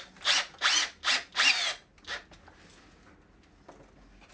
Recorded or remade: recorded